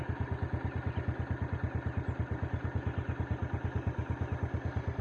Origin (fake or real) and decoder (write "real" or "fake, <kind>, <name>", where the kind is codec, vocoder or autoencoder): real